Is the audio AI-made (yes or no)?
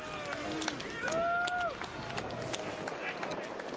no